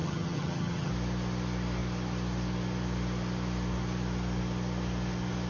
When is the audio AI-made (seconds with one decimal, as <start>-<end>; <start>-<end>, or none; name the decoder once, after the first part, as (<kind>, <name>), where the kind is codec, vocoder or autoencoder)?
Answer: 0.0-0.9 (vocoder, HiFi-GAN)